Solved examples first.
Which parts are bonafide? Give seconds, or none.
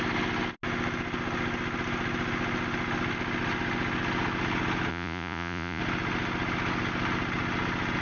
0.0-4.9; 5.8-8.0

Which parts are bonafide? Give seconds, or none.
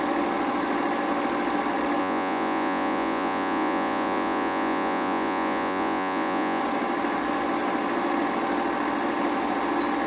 0.0-2.0; 6.6-10.1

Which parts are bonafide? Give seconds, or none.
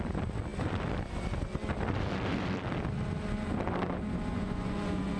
0.0-4.3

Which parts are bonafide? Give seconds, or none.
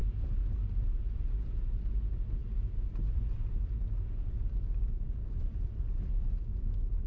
0.0-7.1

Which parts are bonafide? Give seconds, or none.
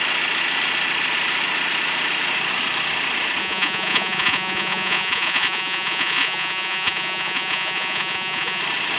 0.0-3.4; 8.6-9.0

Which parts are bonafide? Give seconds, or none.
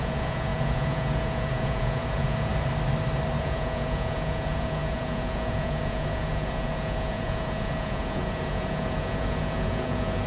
2.5-3.4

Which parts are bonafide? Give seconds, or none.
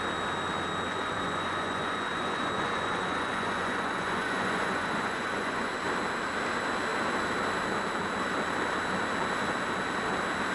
0.0-0.9; 5.7-10.5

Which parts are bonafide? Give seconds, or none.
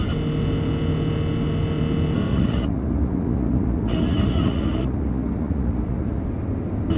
0.0-2.3; 6.2-7.0